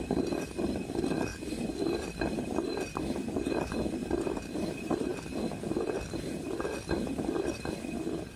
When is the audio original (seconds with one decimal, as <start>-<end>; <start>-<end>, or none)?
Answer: 5.1-6.0